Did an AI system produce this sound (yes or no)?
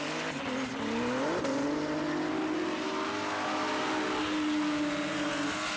no